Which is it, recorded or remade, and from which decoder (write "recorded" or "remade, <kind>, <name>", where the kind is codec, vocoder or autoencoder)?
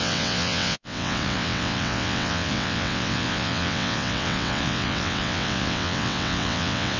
remade, vocoder, WaveNeXt